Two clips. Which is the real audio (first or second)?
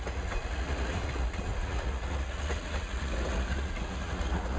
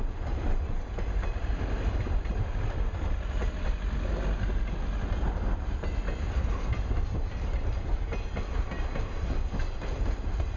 second